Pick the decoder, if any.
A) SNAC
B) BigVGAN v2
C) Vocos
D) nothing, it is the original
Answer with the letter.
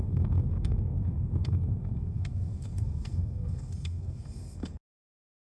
A